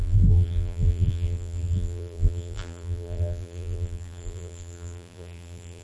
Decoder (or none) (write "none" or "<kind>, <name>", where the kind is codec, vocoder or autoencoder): vocoder, BigVGAN v2